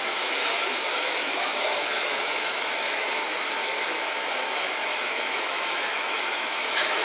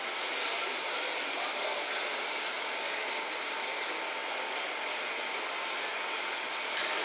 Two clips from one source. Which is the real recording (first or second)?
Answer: second